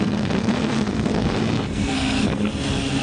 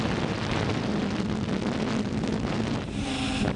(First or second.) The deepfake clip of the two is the first